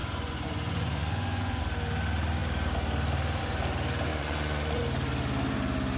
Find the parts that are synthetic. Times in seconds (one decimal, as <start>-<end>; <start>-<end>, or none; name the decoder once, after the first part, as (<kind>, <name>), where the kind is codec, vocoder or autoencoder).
0.0-1.6 (vocoder, Vocos); 4.1-4.8